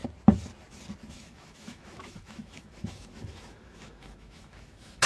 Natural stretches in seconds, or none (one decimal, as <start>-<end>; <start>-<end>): 0.0-1.1